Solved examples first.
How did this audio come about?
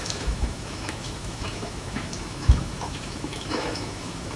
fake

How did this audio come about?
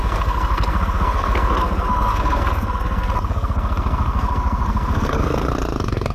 fake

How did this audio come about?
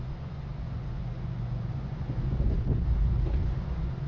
fake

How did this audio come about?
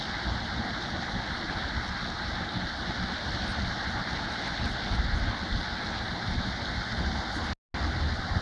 real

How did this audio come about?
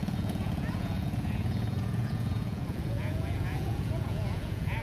fake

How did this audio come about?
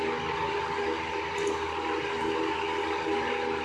real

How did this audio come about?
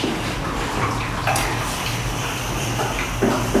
fake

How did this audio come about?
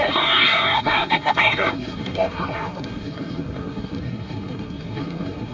fake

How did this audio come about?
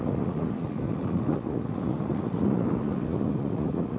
fake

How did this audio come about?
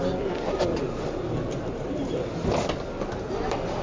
real